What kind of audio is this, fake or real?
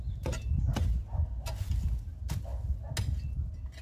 real